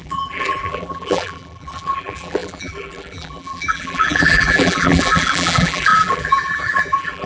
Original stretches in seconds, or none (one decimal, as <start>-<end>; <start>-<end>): none